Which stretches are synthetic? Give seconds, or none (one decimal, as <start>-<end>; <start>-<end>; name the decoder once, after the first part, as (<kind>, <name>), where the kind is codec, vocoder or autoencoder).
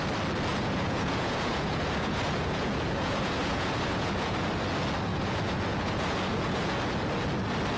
0.5-4.5 (vocoder, Vocos); 5.1-6.8